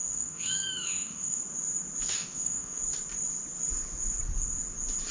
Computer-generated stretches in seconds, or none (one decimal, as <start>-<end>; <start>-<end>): 0.0-1.4; 2.1-2.8